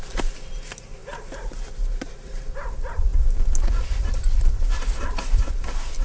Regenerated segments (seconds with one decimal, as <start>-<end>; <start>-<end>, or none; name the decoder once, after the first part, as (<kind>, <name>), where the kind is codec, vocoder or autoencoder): none